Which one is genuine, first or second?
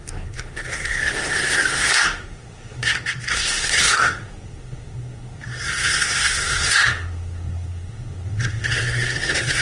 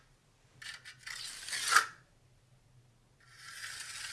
second